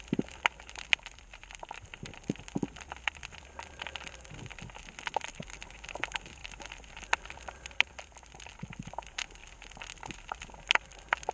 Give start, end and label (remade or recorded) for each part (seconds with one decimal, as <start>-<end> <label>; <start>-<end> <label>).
0.0-1.4 remade; 1.4-5.3 recorded; 5.3-6.4 remade; 6.4-6.9 recorded; 6.9-11.3 remade